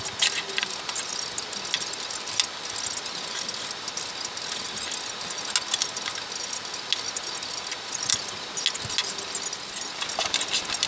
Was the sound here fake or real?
real